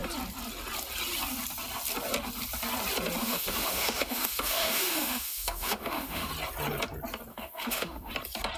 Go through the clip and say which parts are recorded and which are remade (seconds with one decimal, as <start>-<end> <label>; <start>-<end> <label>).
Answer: 0.0-3.2 recorded; 3.2-6.3 remade; 6.3-7.3 recorded; 7.3-8.1 remade; 8.1-8.6 recorded